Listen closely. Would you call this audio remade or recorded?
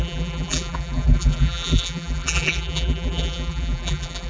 remade